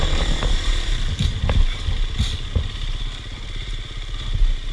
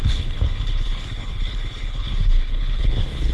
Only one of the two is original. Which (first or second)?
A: first